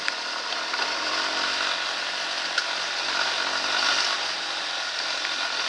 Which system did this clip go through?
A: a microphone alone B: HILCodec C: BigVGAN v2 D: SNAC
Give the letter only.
A